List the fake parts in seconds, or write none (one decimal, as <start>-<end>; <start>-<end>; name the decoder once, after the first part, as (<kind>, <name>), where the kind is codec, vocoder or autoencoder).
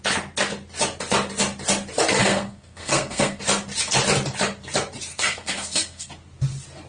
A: 2.2-3.4 (codec, SNAC); 5.1-6.1